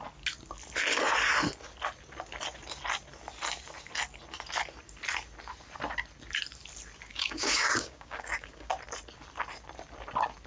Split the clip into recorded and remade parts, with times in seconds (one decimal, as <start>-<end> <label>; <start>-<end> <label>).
0.0-7.1 recorded; 7.1-8.7 remade; 8.7-10.5 recorded